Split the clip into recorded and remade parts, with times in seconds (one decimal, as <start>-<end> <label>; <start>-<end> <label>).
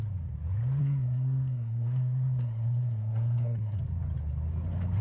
0.0-0.8 recorded; 0.8-3.8 remade; 3.8-5.0 recorded